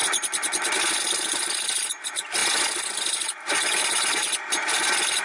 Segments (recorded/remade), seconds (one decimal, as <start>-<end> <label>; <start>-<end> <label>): 0.0-4.2 recorded; 4.2-4.8 remade; 4.8-5.2 recorded